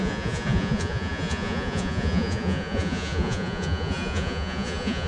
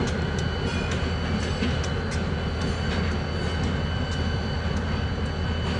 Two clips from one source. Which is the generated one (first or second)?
first